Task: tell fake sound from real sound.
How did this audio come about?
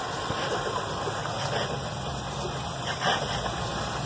real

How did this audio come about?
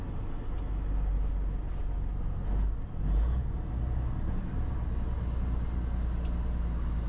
real